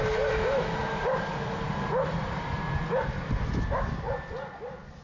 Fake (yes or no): no